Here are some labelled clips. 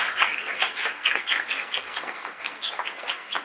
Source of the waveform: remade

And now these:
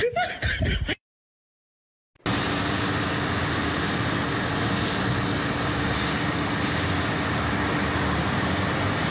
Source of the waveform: recorded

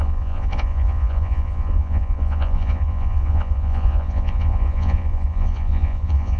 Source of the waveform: remade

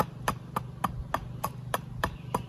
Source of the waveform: recorded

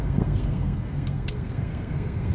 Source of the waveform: remade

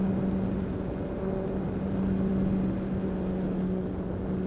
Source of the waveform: recorded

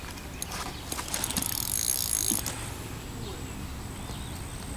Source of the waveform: recorded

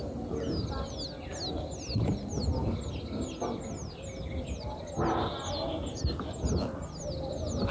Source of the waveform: recorded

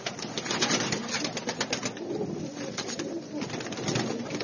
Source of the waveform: recorded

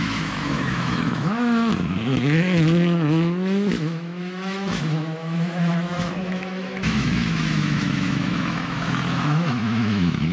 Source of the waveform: remade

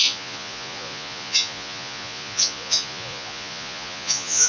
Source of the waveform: remade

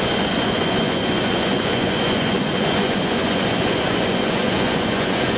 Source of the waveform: remade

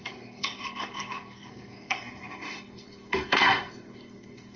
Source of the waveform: remade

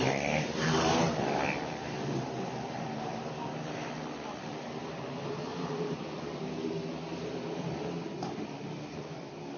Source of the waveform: remade